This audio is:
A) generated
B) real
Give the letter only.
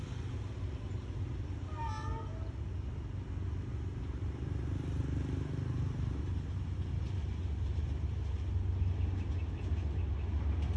B